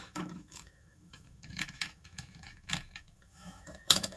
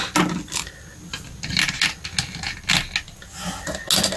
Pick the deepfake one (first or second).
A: first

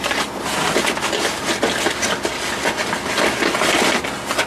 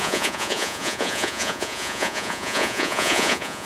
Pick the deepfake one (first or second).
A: second